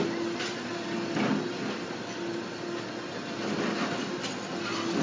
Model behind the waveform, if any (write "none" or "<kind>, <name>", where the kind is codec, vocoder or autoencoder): none